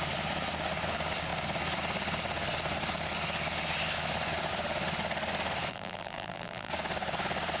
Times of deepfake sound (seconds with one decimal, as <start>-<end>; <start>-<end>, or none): 5.7-6.7